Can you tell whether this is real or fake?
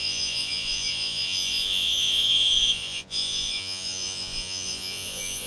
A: fake